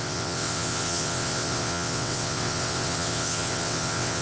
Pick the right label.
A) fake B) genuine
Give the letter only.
A